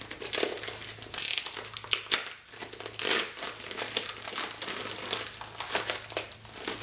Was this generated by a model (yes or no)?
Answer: no